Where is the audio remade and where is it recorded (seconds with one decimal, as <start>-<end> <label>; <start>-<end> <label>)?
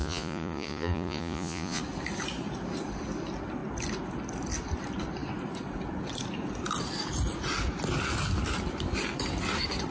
0.0-1.8 remade; 1.8-9.9 recorded